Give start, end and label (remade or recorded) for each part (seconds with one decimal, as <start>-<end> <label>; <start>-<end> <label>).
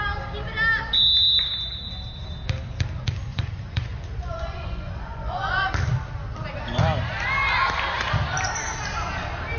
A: 0.0-3.3 recorded; 3.3-5.7 remade; 5.7-9.6 recorded